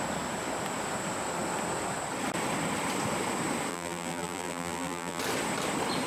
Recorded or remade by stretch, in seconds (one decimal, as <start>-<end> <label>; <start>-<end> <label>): 0.0-3.7 recorded; 3.7-5.2 remade; 5.2-6.1 recorded